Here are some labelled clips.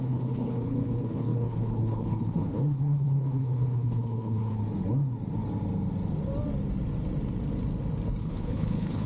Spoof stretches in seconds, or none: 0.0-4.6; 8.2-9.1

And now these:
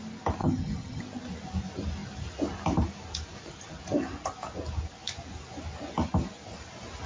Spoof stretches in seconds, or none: 0.4-1.0